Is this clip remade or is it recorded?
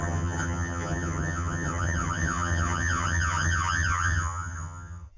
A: remade